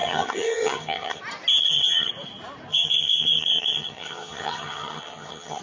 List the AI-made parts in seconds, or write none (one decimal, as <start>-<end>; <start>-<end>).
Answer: 0.0-1.2; 1.6-2.1; 2.7-5.6